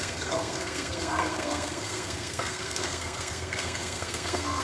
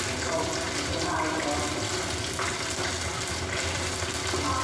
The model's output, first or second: first